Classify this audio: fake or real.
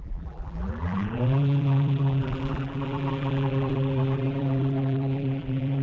fake